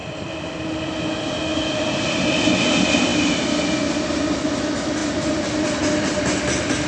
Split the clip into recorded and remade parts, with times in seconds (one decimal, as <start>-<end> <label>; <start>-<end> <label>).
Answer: 0.0-0.6 remade; 0.6-3.1 recorded; 3.1-3.9 remade; 3.9-5.0 recorded; 5.0-5.8 remade; 5.8-6.9 recorded